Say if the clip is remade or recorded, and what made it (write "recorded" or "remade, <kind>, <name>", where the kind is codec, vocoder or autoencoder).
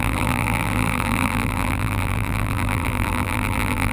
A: remade, vocoder, BigVGAN v2